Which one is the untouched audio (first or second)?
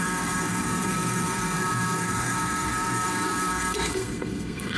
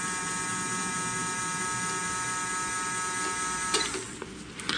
second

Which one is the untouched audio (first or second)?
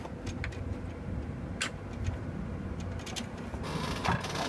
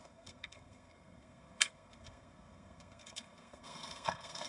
first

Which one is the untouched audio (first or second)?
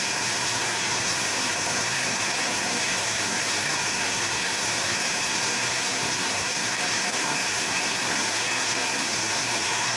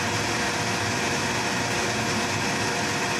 second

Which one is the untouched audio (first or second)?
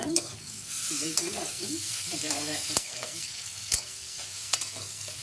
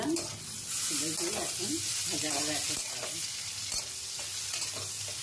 second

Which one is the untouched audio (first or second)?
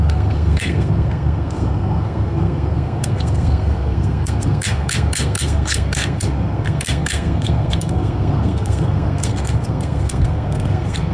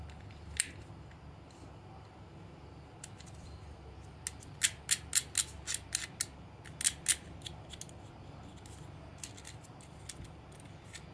second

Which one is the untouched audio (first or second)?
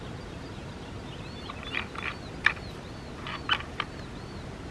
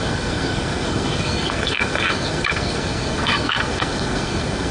first